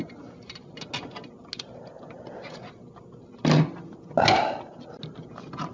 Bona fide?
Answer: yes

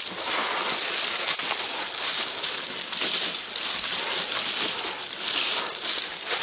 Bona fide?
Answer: yes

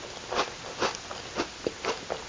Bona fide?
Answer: yes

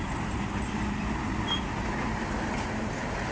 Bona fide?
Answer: yes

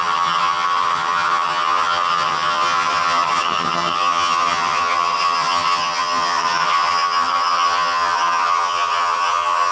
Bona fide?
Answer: no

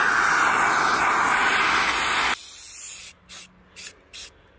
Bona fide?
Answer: yes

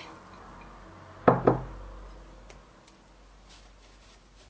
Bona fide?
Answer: yes